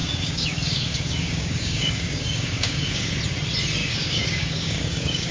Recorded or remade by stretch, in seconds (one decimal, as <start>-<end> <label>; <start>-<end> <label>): 0.0-3.2 remade; 3.2-3.8 recorded; 3.8-5.3 remade